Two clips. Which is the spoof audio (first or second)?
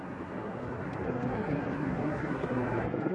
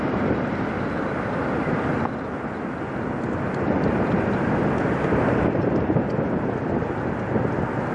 first